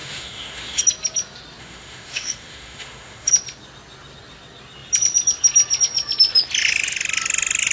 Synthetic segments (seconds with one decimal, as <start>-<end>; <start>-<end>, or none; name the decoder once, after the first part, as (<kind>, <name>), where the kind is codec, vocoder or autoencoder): 0.0-0.8 (autoencoder, DAC-VAE); 1.6-3.3

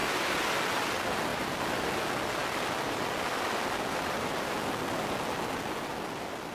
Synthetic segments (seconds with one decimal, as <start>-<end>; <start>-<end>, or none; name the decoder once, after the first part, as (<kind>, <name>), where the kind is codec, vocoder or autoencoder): 1.3-1.9 (vocoder, BigVGAN v2)